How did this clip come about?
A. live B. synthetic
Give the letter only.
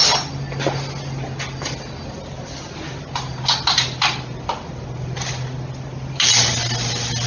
A